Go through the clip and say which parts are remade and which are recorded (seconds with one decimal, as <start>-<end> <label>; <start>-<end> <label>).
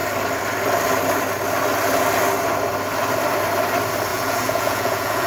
0.0-4.1 recorded; 4.1-5.3 remade